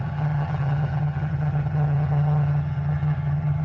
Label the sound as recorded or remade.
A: remade